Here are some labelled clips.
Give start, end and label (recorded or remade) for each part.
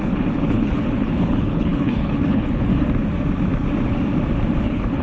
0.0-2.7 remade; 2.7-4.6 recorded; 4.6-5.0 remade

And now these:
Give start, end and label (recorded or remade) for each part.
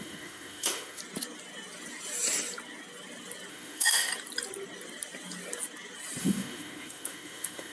0.0-1.0 remade; 1.0-3.5 recorded; 3.5-4.1 remade; 4.1-6.2 recorded; 6.2-7.7 remade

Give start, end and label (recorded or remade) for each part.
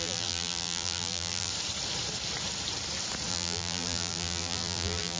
0.0-1.5 remade; 1.5-3.3 recorded; 3.3-5.2 remade